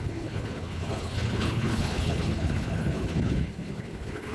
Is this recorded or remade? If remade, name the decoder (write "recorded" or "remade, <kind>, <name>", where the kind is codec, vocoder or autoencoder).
remade, codec, HILCodec